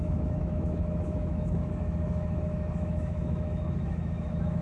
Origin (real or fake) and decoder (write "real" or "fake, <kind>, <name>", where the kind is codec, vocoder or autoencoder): fake, autoencoder, DAC-VAE